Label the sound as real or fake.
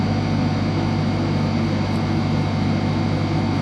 real